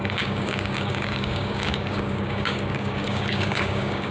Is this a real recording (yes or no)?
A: no